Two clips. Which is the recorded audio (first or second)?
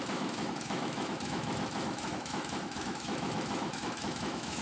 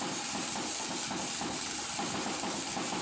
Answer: second